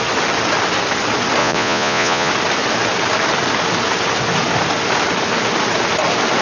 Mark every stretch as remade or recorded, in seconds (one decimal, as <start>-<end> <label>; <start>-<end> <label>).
0.0-1.4 recorded; 1.4-2.3 remade; 2.3-6.4 recorded